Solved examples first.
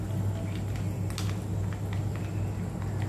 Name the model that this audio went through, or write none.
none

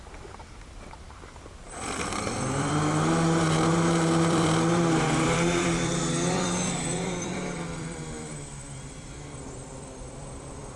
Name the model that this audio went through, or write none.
vocoder, BigVGAN v2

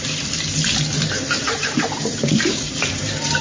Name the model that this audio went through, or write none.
vocoder, BigVGAN v2